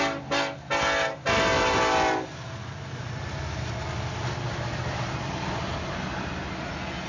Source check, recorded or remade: recorded